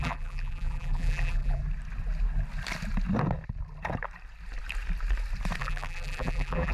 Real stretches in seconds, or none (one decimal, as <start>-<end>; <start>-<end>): 1.6-5.6

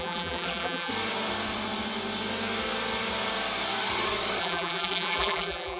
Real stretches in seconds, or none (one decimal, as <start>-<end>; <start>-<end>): 0.9-4.4